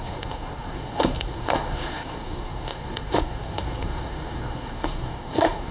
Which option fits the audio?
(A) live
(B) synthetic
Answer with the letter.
B